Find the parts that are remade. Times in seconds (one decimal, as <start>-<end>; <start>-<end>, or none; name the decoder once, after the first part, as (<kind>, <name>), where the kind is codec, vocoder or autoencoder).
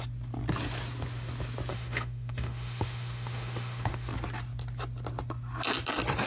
1.7-4.1 (autoencoder, DAC-VAE)